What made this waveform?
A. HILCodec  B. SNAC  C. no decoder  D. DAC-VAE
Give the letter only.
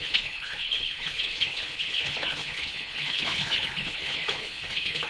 A